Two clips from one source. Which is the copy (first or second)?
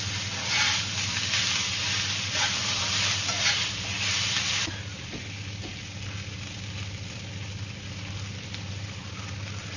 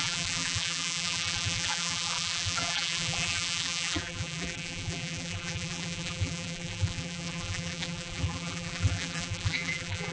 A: second